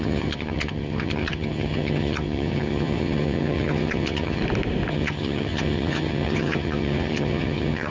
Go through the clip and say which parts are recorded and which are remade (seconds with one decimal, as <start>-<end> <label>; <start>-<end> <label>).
0.0-4.4 remade; 4.4-4.9 recorded; 4.9-7.9 remade